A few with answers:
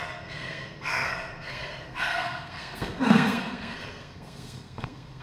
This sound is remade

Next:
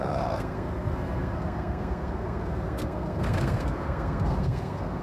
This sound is remade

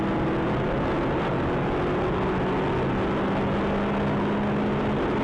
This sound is recorded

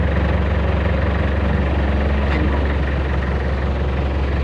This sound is recorded